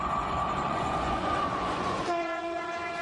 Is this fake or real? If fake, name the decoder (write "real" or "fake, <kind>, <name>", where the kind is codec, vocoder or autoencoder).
fake, vocoder, Vocos